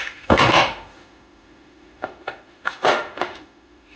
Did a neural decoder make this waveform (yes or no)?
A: yes